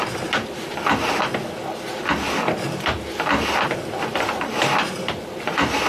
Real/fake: real